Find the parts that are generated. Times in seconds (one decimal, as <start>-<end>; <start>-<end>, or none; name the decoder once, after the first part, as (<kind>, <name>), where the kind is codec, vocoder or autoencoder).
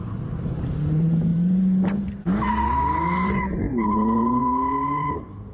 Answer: 0.0-5.5 (vocoder, BigVGAN v2)